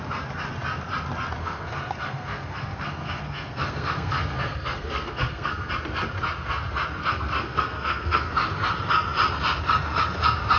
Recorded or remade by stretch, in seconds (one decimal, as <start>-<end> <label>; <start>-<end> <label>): 0.0-1.4 recorded; 1.4-5.7 remade; 5.7-7.0 recorded; 7.0-8.3 remade; 8.3-10.6 recorded